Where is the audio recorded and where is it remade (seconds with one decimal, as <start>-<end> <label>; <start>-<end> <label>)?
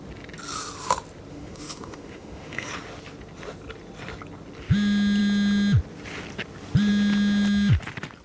0.0-1.3 recorded; 1.3-2.7 remade; 2.7-8.2 recorded